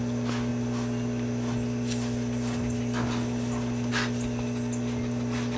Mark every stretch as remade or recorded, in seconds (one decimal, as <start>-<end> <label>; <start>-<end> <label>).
0.0-5.6 recorded